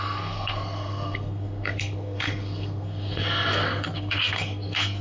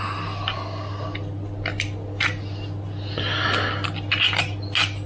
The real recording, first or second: second